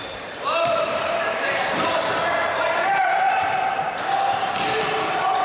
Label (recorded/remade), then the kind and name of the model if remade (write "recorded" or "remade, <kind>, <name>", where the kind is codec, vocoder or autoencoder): remade, vocoder, BigVGAN v2